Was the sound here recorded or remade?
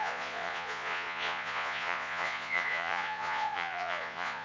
remade